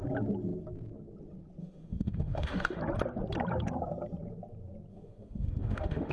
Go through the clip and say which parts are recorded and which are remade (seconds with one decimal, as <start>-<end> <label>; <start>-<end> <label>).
0.0-1.6 recorded; 1.6-2.8 remade; 2.8-4.9 recorded; 4.9-6.1 remade